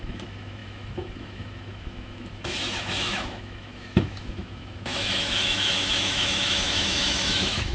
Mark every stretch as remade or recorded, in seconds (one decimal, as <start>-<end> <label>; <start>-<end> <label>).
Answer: 0.0-7.7 remade